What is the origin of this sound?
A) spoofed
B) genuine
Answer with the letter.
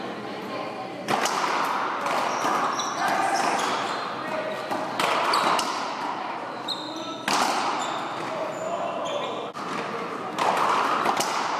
B